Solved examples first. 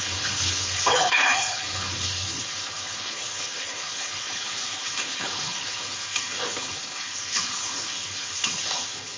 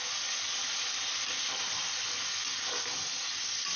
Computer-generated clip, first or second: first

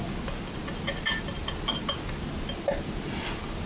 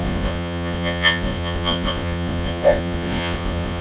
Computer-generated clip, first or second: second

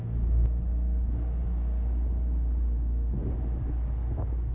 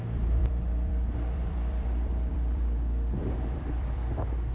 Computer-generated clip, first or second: second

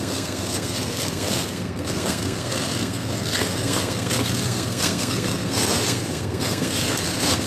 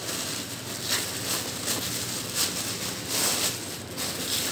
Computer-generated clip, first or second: first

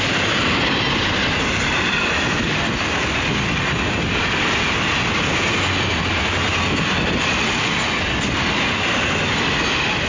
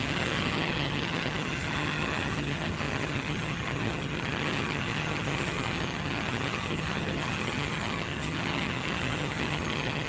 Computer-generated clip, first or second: second